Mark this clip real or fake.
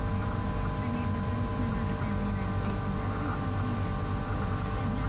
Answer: real